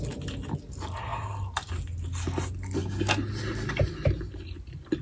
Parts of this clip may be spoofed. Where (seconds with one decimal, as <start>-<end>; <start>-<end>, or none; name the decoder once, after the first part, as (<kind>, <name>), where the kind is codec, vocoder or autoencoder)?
none